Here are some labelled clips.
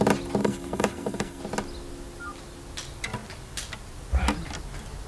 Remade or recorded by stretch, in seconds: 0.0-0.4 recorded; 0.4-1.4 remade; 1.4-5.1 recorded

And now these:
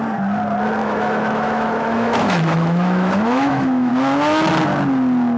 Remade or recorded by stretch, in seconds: 0.0-0.8 recorded; 0.8-3.9 remade; 3.9-5.4 recorded

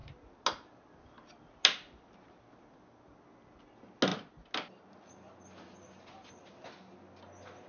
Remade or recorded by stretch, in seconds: 0.0-7.7 recorded

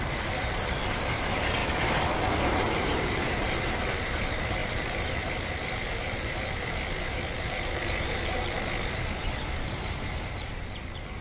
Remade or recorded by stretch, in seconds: 0.0-1.6 remade; 1.6-2.4 recorded; 2.4-11.2 remade